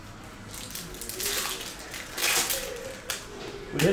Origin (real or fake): real